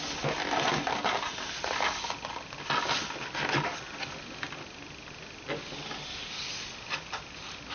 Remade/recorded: recorded